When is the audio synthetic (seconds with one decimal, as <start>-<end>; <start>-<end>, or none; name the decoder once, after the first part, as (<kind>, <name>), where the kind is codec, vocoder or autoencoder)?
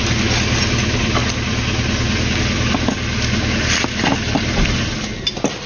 none